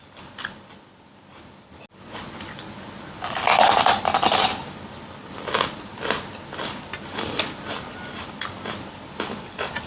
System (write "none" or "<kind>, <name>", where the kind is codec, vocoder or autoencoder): none